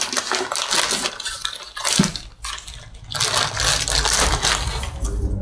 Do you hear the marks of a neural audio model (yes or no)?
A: no